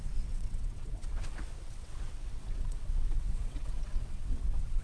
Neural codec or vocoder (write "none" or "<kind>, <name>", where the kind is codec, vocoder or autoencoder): vocoder, WaveNeXt